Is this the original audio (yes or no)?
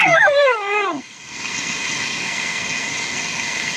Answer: no